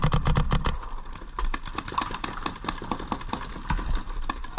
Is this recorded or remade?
recorded